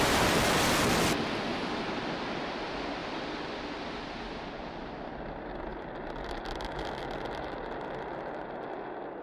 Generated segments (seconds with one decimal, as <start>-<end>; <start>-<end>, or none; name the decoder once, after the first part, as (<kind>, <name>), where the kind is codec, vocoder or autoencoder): 3.0-4.9 (vocoder, BigVGAN v2); 5.7-7.0